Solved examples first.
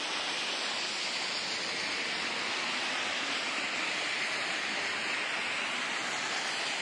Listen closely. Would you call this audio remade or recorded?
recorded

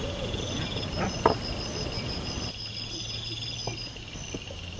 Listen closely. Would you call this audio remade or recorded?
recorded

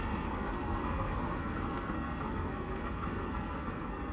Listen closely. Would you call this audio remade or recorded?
remade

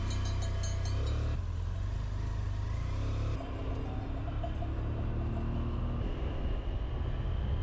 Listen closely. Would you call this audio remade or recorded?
recorded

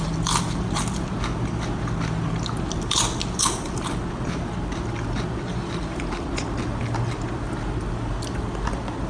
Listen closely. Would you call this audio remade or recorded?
recorded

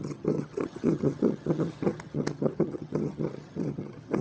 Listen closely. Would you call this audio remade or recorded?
remade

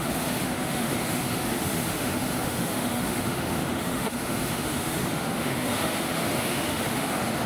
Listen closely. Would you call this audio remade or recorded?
remade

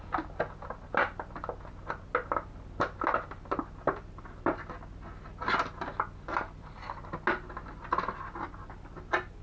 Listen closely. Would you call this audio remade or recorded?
recorded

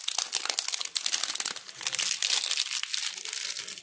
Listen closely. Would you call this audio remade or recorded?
recorded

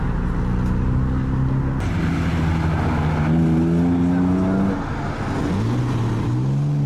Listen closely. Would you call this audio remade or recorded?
recorded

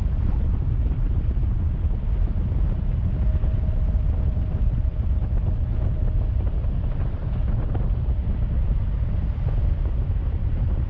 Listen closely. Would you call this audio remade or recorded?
recorded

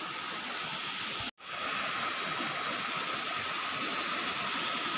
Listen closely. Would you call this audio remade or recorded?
recorded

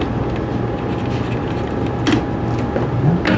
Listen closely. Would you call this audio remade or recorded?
recorded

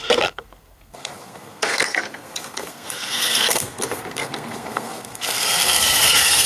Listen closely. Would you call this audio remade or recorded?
remade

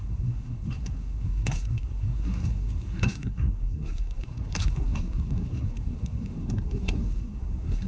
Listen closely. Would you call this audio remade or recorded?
remade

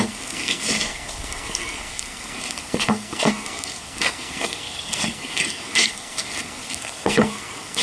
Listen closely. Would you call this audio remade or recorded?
remade